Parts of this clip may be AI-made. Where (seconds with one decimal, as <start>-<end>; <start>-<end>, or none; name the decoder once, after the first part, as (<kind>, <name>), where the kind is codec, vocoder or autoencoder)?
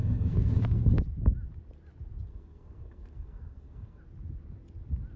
0.0-1.0 (codec, SNAC); 2.3-4.0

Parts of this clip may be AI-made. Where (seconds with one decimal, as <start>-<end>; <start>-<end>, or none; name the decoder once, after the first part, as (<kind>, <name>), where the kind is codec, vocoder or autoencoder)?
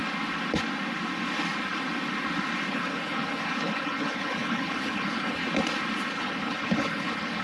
2.7-5.4 (codec, HILCodec); 6.1-7.4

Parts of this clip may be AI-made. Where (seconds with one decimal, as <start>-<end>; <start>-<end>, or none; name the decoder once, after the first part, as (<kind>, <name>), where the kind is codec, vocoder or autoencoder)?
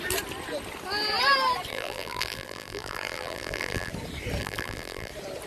1.7-3.9 (vocoder, BigVGAN v2); 4.4-5.1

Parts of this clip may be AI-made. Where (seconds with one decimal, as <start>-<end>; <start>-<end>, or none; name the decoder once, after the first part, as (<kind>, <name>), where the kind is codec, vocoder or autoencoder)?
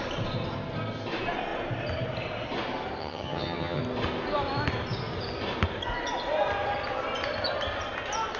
3.0-3.8 (vocoder, HiFi-GAN)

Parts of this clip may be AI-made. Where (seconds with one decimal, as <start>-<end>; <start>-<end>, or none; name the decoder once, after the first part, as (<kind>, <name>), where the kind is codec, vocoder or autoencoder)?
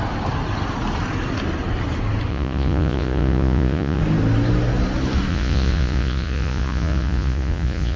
2.3-4.0 (vocoder, Vocos); 5.3-8.0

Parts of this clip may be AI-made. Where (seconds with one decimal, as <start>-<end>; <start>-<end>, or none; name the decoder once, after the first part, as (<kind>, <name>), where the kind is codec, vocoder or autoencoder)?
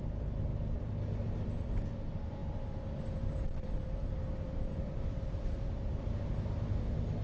0.5-1.8 (vocoder, BigVGAN v2); 2.4-6.3